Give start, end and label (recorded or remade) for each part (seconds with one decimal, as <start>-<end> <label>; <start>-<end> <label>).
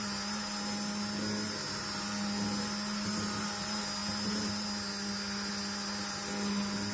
0.0-6.9 recorded